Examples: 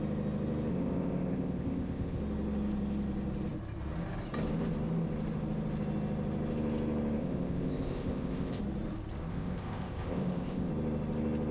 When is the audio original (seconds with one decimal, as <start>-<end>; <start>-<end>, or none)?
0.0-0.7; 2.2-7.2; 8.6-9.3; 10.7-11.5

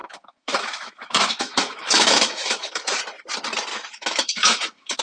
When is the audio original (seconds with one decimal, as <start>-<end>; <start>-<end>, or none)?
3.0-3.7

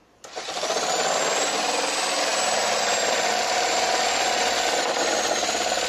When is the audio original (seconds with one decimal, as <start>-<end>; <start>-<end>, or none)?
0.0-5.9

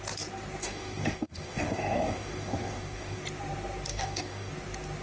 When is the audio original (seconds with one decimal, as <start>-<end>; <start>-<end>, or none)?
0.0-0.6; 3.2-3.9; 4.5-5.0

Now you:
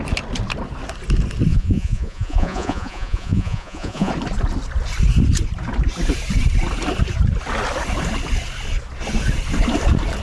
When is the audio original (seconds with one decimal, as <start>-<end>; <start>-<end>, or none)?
0.0-1.5; 4.1-10.2

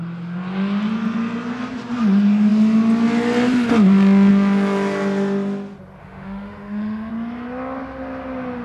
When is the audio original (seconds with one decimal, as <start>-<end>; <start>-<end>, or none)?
0.0-6.0; 7.1-8.6